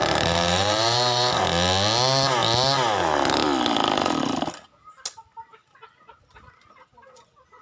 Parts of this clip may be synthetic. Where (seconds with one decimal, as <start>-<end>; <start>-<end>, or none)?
0.0-1.4